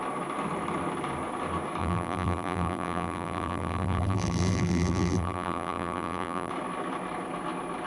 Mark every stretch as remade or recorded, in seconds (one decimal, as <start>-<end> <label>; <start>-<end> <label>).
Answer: 0.0-1.8 recorded; 1.8-6.5 remade; 6.5-7.9 recorded